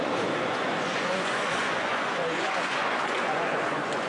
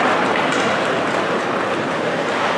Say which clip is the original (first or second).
second